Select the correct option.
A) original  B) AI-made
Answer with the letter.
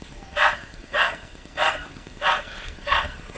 B